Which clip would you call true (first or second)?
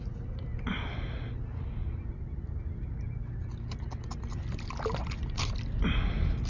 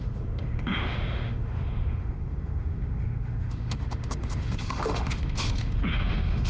first